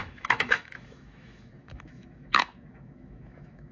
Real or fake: fake